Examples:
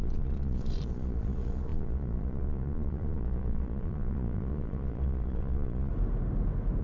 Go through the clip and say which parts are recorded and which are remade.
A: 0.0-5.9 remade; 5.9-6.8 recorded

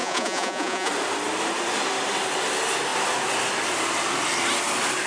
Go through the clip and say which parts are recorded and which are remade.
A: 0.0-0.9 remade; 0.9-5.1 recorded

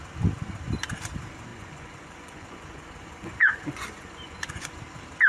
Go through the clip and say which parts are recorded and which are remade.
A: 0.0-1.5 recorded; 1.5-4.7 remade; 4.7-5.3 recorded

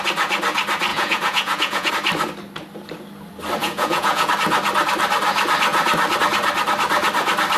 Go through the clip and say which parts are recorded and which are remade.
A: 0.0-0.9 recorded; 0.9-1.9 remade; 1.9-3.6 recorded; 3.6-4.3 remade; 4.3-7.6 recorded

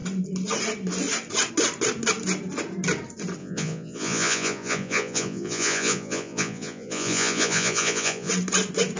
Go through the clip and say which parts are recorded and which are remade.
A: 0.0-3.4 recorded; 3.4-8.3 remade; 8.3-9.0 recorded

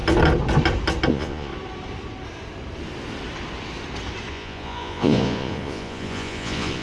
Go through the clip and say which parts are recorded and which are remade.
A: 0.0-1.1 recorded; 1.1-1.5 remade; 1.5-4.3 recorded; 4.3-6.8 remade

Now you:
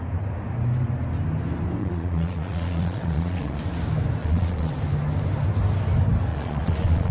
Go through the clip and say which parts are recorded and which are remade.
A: 0.0-1.8 recorded; 1.8-3.6 remade; 3.6-4.2 recorded; 4.2-4.7 remade; 4.7-6.3 recorded; 6.3-7.1 remade